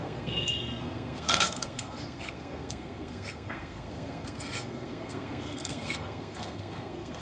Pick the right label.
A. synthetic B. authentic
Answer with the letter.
A